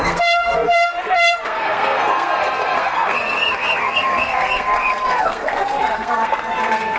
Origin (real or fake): fake